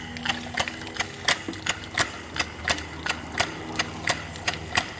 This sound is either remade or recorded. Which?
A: recorded